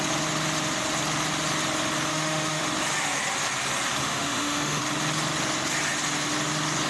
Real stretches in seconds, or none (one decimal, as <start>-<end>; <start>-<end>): 0.0-2.1; 2.6-4.0; 4.8-6.9